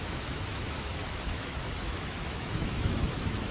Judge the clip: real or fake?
fake